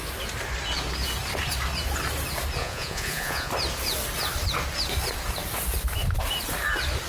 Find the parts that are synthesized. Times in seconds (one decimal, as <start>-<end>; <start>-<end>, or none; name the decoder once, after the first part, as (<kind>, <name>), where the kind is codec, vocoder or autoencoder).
2.6-3.5 (vocoder, Vocos)